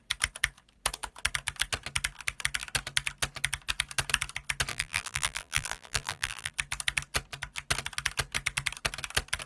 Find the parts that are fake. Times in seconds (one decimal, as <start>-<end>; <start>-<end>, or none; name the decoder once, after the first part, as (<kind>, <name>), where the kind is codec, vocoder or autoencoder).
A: 4.7-6.5 (vocoder, BigVGAN v2)